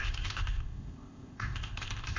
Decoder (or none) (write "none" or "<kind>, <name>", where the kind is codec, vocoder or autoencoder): codec, ZipCodec